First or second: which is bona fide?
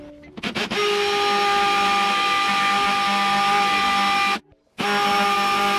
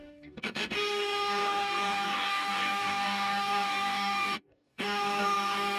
first